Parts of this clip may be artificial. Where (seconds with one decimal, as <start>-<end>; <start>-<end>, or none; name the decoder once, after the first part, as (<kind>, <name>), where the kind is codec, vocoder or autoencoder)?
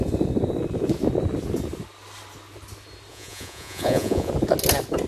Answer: 3.1-4.3 (vocoder, Vocos)